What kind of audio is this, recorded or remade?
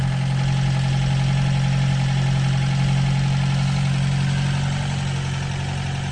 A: recorded